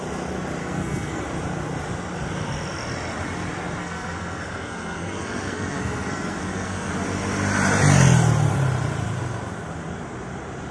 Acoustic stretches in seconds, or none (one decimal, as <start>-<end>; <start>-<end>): 0.0-0.6; 1.2-3.8; 6.9-10.7